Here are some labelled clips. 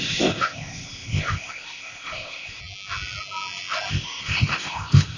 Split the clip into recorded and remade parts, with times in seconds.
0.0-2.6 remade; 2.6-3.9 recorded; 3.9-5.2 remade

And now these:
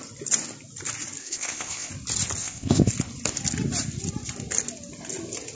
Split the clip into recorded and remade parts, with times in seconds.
0.0-1.2 recorded; 1.2-1.9 remade; 1.9-2.4 recorded; 2.4-2.9 remade; 2.9-5.5 recorded